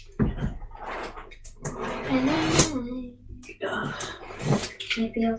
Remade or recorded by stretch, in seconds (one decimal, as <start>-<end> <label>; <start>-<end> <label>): 0.0-5.4 recorded